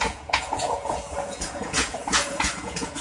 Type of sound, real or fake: fake